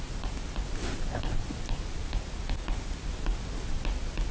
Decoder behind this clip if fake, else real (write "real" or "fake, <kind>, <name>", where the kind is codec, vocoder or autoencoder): real